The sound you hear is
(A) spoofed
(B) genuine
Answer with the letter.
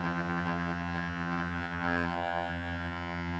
A